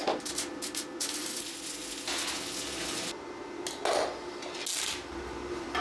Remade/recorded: recorded